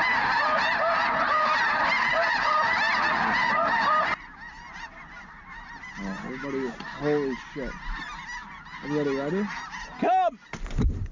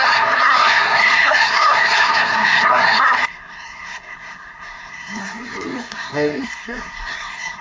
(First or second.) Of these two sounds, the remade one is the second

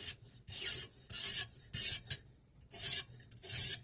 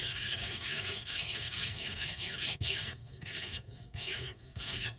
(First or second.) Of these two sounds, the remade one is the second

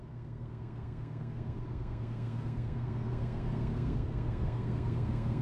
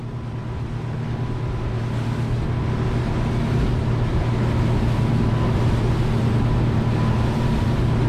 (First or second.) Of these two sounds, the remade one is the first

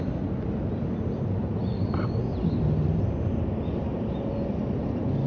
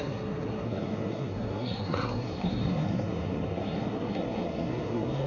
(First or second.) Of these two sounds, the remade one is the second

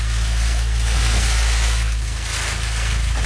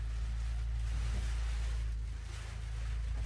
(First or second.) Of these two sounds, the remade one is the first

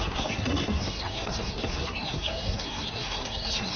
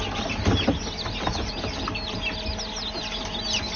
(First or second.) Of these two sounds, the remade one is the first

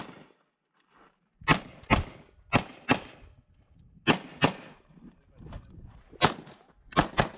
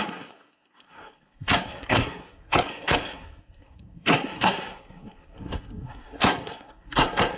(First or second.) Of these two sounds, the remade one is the second